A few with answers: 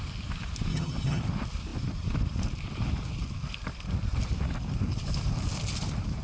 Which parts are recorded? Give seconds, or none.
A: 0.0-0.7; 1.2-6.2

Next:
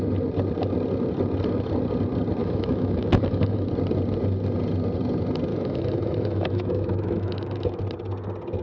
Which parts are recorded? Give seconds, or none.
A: 0.0-2.4; 3.7-5.5; 7.8-8.6

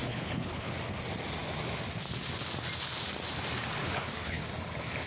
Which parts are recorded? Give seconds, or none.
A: 0.7-3.8; 4.4-5.1